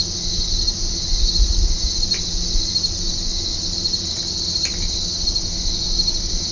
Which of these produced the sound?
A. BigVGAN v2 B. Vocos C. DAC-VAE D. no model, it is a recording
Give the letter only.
D